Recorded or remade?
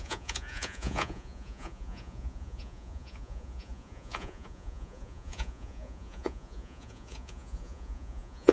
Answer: remade